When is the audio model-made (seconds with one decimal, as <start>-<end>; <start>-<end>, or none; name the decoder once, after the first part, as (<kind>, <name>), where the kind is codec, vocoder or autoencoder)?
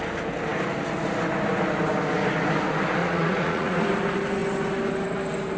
3.0-3.8 (vocoder, Vocos)